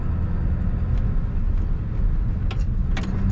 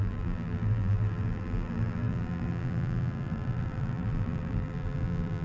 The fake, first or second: second